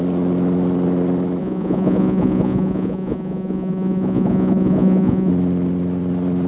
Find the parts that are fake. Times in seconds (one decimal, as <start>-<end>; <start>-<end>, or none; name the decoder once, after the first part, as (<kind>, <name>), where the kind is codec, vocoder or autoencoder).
1.4-5.3 (vocoder, Vocos)